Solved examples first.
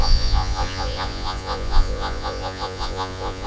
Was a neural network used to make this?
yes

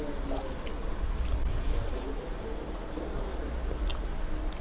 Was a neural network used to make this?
no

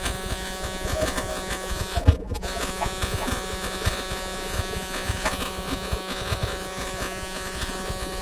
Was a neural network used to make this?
yes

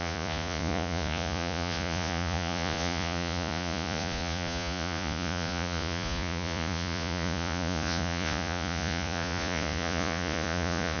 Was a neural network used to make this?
yes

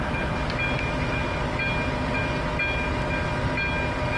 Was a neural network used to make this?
no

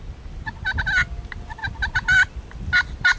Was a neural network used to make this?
no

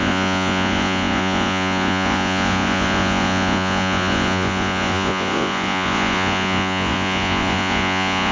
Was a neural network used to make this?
yes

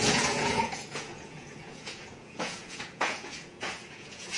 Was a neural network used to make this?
yes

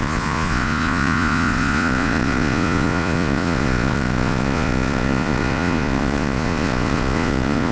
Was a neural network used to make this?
yes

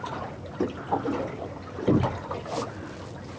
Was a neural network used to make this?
no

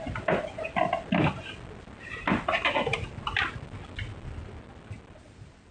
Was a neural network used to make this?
no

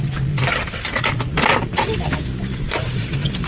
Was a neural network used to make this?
no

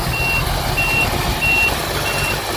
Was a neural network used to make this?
no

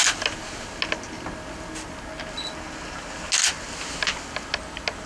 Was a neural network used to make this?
no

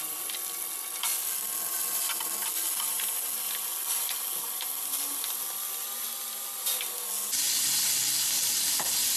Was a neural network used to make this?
no